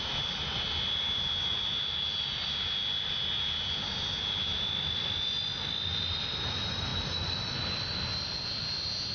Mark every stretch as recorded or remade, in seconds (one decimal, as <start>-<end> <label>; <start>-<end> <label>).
0.0-1.5 remade; 1.5-6.0 recorded; 6.0-9.1 remade